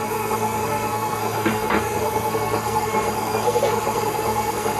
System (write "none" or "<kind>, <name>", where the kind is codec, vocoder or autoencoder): codec, SNAC